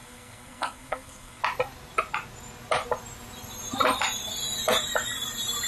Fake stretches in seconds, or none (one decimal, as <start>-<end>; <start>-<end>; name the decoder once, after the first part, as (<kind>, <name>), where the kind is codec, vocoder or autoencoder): 0.0-1.4 (codec, SNAC)